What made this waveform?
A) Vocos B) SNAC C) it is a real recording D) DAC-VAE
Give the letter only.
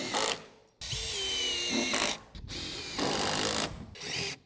C